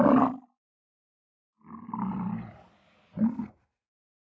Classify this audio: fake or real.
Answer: real